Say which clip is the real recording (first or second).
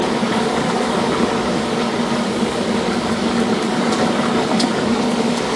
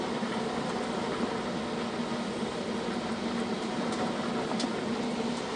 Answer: second